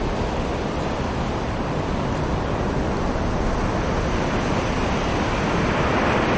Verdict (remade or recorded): recorded